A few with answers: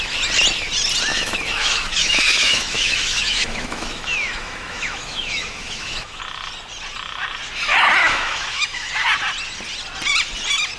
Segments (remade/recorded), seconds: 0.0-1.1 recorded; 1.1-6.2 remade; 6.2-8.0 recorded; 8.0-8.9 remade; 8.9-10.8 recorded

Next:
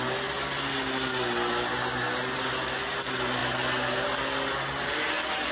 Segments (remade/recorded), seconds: 0.0-5.5 recorded

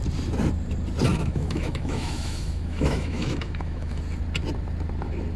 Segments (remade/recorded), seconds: 0.0-1.1 recorded; 1.1-4.0 remade; 4.0-5.4 recorded

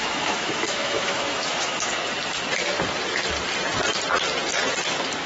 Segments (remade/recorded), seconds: 0.0-1.9 remade; 1.9-5.3 recorded